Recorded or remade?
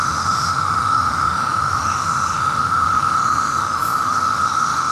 remade